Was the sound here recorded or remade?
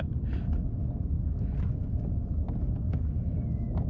recorded